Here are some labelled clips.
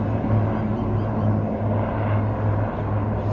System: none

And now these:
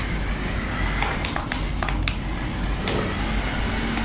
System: none